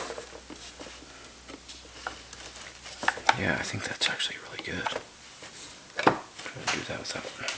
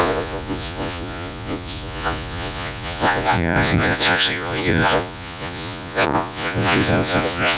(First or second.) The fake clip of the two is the second